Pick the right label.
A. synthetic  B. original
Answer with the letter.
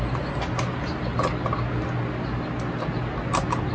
B